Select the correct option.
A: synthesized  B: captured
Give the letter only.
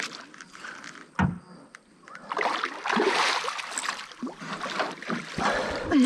B